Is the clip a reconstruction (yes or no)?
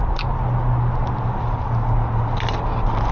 no